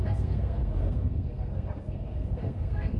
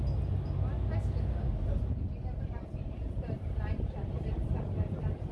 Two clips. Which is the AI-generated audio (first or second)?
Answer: first